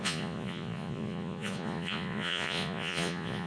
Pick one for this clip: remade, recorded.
remade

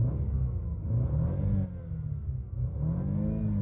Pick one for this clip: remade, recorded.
recorded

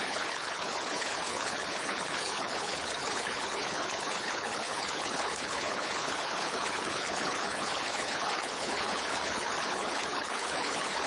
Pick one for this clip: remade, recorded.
remade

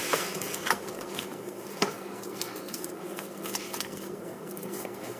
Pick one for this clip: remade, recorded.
remade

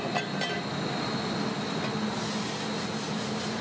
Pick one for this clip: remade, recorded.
recorded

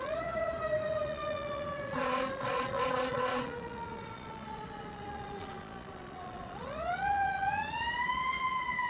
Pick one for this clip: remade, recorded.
remade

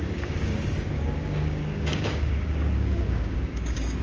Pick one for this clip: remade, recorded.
remade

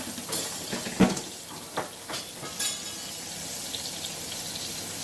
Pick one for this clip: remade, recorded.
recorded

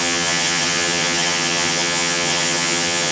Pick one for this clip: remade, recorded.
remade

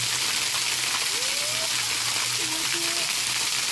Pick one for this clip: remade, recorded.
recorded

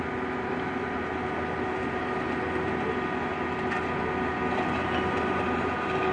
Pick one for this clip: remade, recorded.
recorded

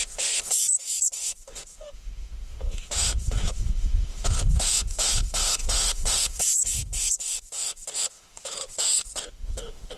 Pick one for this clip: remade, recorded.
remade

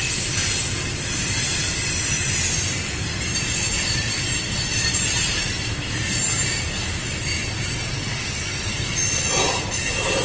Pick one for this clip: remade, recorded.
recorded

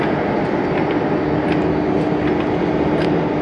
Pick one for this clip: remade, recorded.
recorded